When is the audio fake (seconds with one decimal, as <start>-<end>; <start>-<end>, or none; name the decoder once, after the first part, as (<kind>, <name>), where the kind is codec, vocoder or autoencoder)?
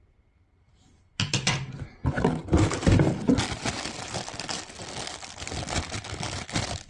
none